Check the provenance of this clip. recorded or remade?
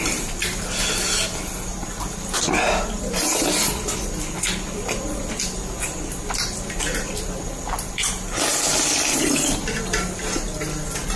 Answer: recorded